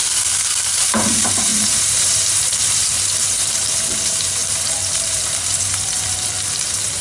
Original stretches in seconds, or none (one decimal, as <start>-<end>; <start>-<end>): 0.0-0.8